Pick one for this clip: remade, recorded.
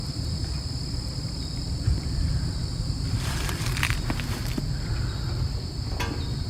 remade